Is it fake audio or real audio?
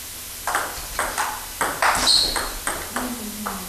real